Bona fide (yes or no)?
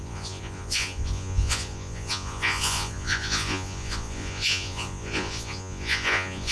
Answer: no